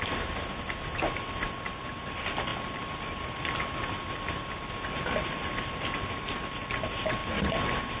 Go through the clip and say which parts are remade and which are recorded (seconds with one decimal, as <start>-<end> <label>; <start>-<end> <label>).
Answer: 0.0-7.2 recorded; 7.2-8.0 remade